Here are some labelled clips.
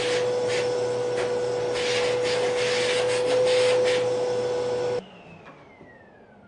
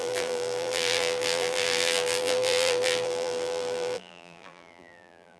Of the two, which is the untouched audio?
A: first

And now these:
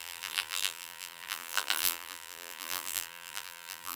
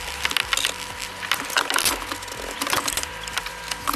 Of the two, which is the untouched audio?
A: second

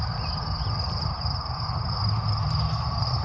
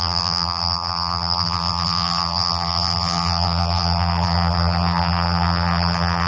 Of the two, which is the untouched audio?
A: first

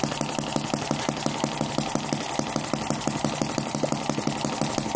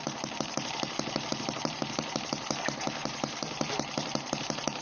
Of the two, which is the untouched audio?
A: first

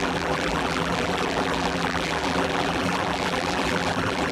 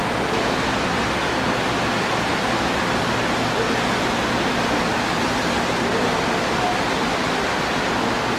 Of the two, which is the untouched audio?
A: second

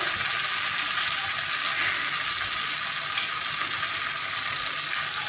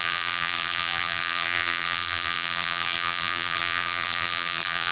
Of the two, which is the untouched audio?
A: first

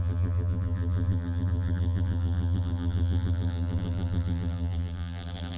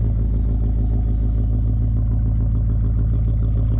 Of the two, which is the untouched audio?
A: second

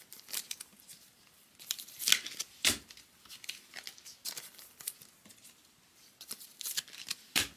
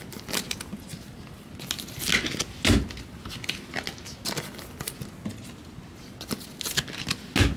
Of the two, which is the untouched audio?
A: second